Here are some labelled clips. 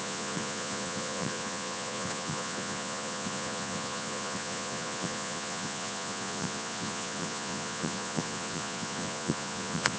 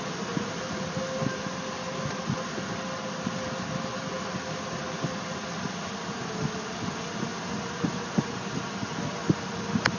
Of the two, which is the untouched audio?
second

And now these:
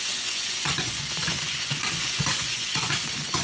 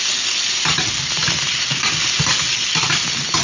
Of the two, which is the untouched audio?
second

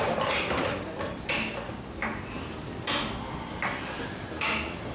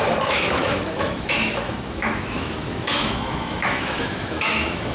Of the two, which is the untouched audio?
first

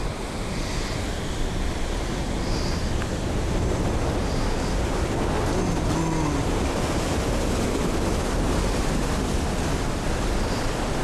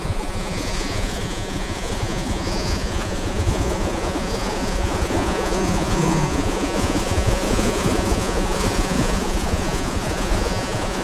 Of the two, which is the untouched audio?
first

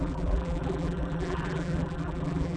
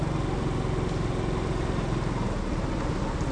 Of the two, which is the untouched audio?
second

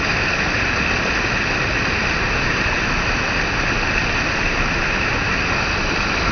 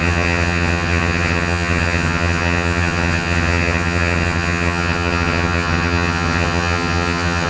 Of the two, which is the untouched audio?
first